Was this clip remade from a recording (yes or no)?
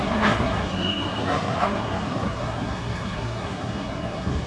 yes